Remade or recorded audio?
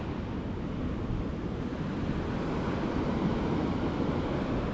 recorded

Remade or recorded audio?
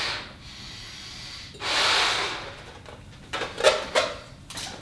recorded